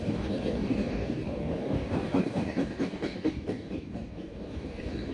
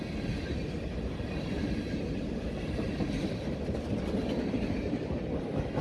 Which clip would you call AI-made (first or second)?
first